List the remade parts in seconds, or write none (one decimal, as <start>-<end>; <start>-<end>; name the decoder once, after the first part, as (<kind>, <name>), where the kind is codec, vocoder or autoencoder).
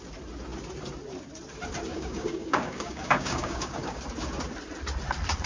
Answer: 1.9-4.0 (codec, DAC)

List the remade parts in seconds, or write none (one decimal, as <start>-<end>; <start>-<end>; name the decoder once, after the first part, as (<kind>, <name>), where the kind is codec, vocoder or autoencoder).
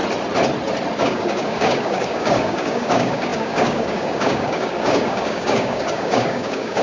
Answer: 1.0-6.8 (codec, DAC)